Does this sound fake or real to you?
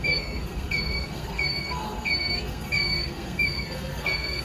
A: fake